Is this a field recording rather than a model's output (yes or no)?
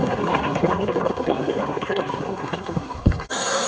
no